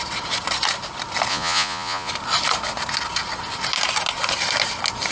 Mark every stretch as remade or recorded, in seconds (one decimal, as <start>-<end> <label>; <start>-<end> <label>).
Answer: 0.0-1.3 recorded; 1.3-2.1 remade; 2.1-5.1 recorded